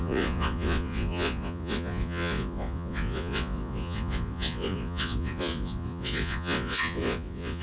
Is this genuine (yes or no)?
no